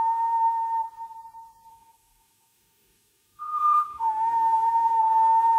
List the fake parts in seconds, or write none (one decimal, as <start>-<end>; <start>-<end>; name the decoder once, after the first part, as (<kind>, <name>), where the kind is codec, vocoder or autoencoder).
1.7-5.0 (codec, DAC)